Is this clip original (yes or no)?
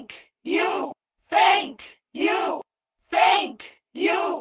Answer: no